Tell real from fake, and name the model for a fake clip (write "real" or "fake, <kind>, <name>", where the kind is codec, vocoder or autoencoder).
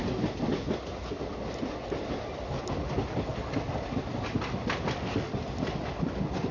real